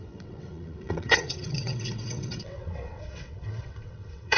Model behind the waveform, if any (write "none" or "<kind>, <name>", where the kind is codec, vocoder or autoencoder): vocoder, WaveNeXt